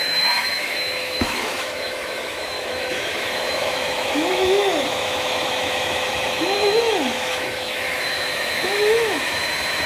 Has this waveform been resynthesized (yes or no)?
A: yes